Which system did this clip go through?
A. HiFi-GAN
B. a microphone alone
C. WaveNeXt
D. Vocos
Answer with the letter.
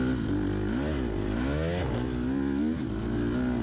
B